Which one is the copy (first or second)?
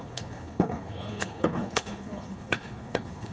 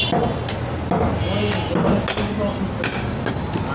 first